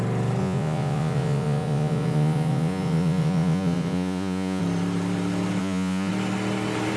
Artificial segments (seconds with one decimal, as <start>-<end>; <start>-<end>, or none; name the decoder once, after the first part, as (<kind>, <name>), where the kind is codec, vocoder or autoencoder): 0.4-4.6 (vocoder, Vocos); 5.6-6.1